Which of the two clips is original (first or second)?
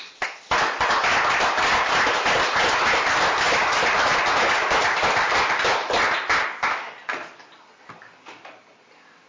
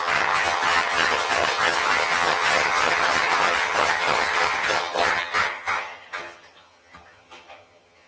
first